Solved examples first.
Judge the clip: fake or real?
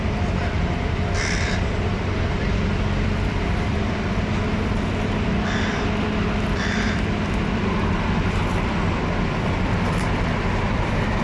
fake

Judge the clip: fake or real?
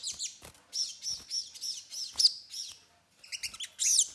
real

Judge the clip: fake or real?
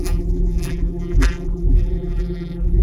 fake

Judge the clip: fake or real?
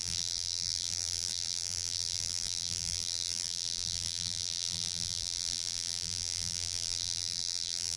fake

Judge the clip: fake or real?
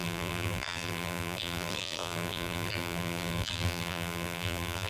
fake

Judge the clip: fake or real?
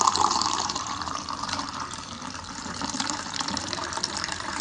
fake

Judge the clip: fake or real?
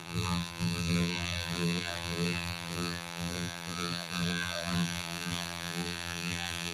fake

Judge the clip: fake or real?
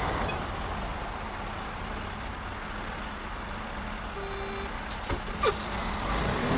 real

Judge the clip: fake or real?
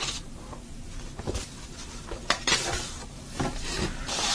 fake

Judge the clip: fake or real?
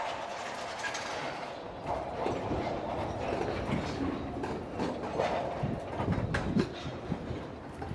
real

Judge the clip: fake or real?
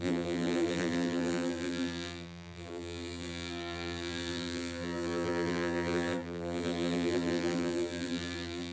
fake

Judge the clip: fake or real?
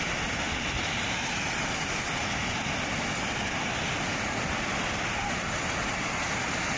real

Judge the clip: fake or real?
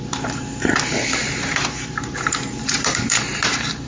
fake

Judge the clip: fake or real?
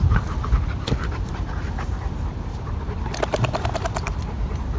real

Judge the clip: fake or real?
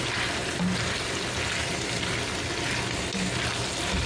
real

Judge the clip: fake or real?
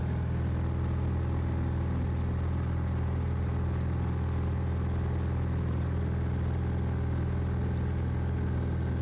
real